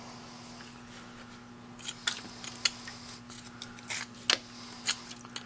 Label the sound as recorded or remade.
recorded